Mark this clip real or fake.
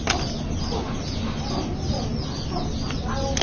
real